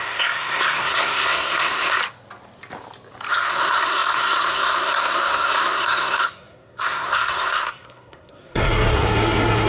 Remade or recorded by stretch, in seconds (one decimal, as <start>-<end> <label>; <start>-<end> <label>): 0.0-2.0 remade; 2.0-3.3 recorded; 3.3-9.7 remade